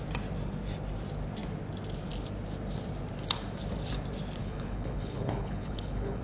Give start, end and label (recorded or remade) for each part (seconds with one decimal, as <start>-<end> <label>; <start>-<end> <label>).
0.0-4.4 recorded; 4.4-6.2 remade